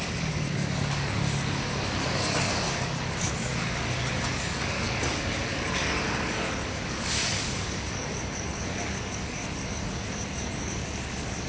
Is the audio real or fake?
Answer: fake